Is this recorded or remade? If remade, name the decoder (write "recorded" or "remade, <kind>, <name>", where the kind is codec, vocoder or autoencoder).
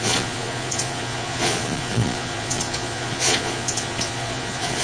remade, vocoder, Vocos